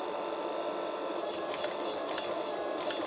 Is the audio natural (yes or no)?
yes